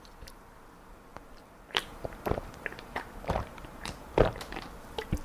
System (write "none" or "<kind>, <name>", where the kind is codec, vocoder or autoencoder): vocoder, BigVGAN v2